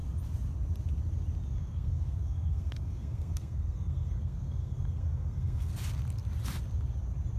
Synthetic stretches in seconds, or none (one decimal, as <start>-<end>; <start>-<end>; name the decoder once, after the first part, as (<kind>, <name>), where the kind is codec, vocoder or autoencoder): 1.6-5.7 (codec, SNAC)